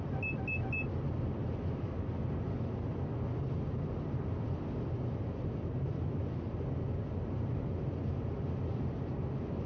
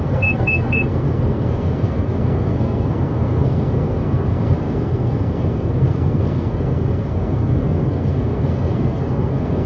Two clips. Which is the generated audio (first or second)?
second